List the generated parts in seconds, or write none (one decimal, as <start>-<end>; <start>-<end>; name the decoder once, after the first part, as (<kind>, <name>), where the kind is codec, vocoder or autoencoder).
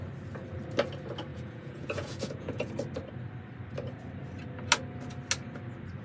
1.3-2.7 (vocoder, Vocos)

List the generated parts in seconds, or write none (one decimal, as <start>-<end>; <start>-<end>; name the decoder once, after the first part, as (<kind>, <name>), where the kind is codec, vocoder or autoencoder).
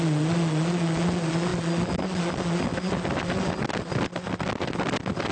none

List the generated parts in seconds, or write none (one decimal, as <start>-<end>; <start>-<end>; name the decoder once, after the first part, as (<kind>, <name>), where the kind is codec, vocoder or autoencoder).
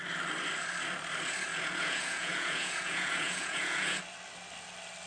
1.5-4.0 (vocoder, Vocos)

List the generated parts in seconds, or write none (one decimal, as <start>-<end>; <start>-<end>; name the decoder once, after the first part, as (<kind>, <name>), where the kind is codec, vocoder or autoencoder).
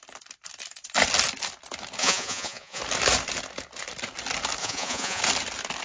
2.0-2.8 (vocoder, Vocos); 4.6-5.2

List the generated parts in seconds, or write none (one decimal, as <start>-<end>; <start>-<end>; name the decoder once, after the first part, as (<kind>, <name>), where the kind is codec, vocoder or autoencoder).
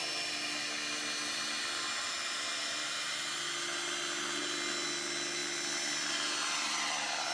none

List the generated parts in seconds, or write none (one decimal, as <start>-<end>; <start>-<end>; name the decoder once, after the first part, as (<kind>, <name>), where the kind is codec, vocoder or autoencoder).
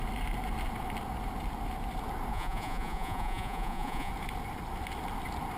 2.3-4.1 (vocoder, Vocos)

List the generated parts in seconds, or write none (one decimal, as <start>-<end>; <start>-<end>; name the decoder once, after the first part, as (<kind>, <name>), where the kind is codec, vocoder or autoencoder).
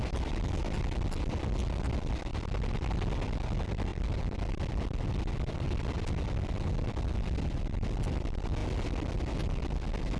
none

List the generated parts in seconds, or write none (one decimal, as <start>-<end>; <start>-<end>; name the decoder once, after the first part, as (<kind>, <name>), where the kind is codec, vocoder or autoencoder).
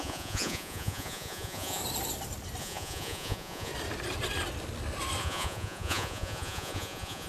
0.0-1.8 (vocoder, Vocos); 2.6-3.7; 5.2-7.3